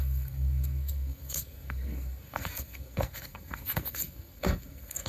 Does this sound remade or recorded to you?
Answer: remade